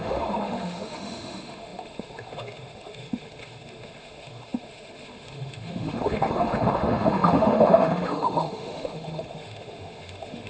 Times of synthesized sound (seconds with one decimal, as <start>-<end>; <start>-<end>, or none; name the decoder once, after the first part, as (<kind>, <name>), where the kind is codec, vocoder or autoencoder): 0.0-10.5 (autoencoder, DAC-VAE)

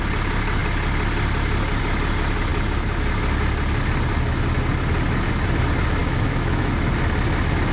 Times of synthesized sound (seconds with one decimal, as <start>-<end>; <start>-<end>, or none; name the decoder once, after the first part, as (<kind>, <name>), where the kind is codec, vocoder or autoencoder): 6.0-6.7 (autoencoder, DAC-VAE)

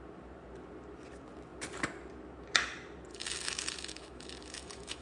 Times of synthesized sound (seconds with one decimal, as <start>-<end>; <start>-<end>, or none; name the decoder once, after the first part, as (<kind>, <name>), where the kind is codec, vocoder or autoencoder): 3.1-5.0 (autoencoder, DAC-VAE)

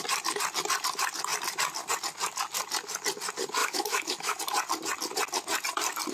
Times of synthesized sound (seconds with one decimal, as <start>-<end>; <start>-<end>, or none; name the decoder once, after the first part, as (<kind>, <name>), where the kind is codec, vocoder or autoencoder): 3.6-4.4 (autoencoder, DAC-VAE)

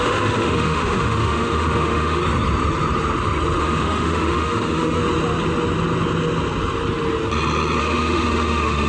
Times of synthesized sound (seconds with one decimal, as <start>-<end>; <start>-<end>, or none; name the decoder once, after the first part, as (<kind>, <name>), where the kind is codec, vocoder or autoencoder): 0.0-2.2 (autoencoder, DAC-VAE); 3.6-5.0; 7.8-8.9